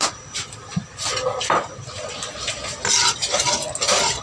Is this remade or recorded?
recorded